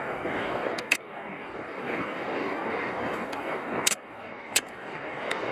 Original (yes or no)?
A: no